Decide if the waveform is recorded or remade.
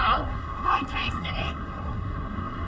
remade